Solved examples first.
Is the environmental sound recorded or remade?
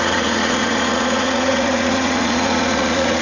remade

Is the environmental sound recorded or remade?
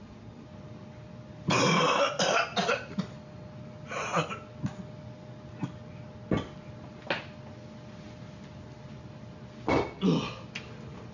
recorded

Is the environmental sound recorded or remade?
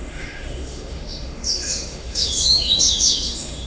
remade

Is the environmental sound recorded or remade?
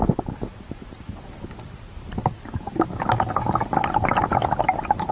recorded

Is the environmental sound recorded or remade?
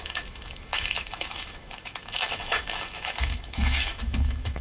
remade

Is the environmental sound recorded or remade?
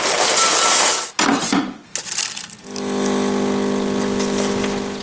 recorded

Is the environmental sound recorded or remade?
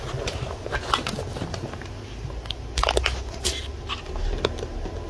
recorded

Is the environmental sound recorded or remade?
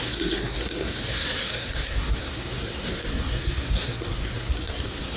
remade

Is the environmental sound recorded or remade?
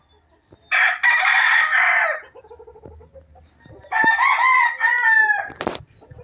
recorded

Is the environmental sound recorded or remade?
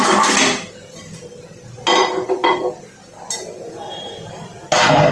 recorded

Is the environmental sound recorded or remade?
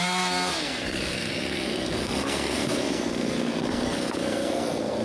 remade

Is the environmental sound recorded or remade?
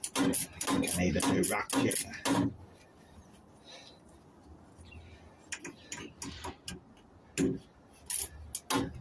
recorded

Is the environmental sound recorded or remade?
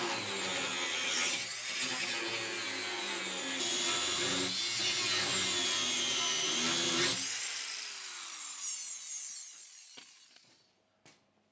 recorded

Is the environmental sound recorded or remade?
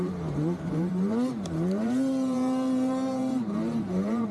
remade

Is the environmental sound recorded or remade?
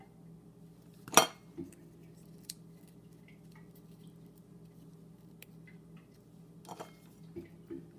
recorded